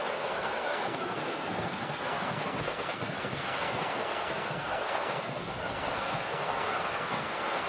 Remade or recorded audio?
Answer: remade